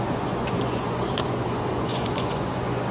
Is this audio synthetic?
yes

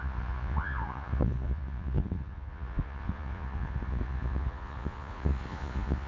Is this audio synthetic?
yes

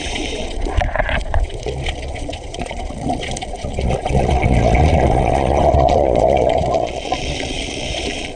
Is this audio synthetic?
yes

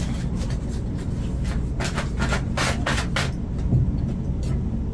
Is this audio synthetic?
no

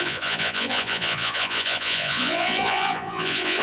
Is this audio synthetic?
yes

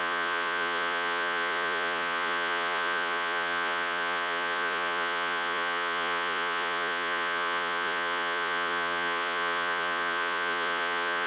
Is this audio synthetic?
yes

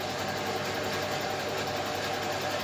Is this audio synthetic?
no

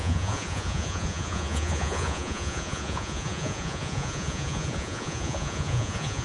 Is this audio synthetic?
yes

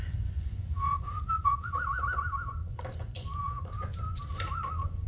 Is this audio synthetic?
yes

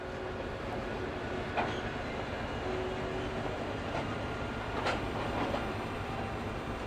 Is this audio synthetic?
no